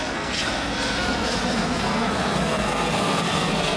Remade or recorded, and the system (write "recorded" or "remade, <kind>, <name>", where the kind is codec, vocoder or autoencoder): remade, codec, SNAC